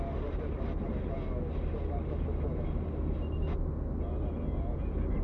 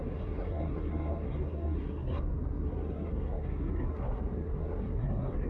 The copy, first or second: second